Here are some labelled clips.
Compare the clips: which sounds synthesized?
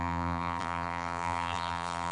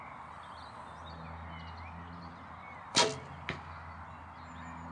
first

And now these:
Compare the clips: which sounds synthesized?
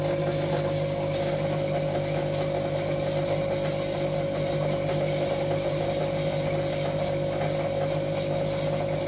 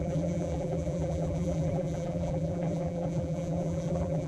second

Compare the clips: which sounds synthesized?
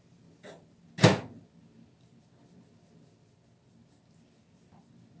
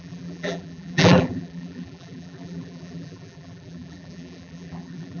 second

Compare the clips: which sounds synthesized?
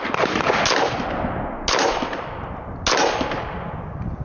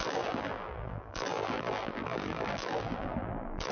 second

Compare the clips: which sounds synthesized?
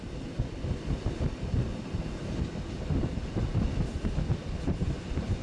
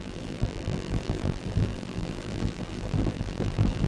second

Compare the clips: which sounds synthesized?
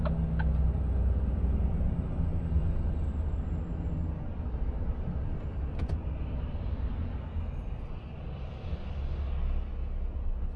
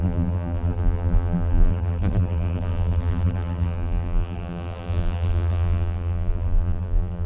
second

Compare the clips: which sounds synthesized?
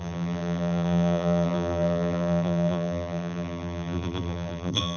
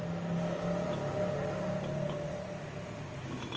first